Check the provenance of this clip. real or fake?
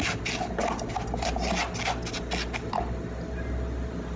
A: real